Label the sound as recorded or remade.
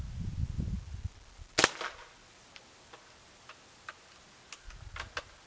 recorded